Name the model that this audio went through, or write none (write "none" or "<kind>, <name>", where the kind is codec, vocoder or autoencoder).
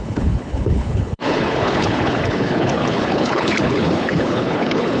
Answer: codec, HILCodec